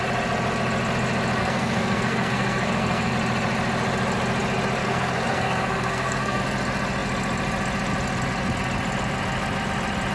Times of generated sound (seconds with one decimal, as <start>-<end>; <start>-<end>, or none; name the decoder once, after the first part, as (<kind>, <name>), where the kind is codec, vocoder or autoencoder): 1.4-3.1 (codec, SNAC); 4.8-6.4